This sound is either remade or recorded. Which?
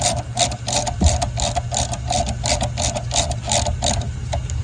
recorded